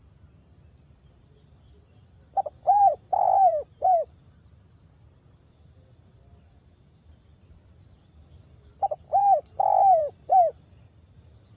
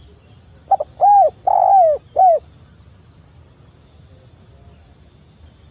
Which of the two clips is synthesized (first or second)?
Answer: first